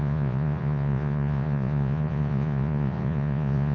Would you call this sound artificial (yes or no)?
yes